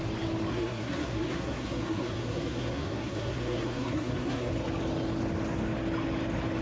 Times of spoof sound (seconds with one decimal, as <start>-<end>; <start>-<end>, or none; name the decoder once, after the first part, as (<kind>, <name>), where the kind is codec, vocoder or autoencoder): 0.5-4.5 (codec, SNAC)